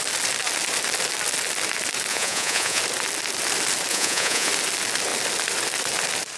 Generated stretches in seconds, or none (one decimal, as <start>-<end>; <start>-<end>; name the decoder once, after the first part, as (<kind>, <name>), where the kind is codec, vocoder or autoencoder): 2.1-2.8 (vocoder, Vocos); 3.9-4.5